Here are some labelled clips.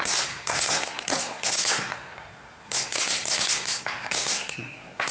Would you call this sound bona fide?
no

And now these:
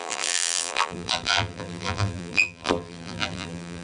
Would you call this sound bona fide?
no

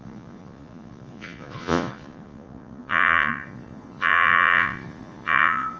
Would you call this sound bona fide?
no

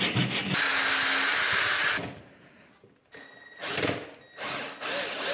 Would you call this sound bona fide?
yes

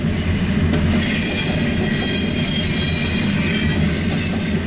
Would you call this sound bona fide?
yes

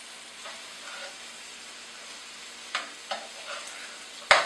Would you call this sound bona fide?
yes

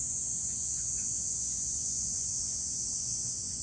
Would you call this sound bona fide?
no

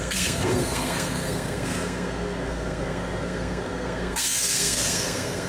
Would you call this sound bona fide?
no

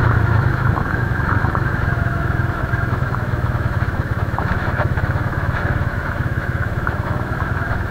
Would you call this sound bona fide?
no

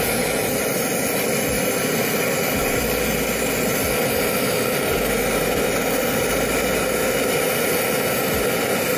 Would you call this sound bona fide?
yes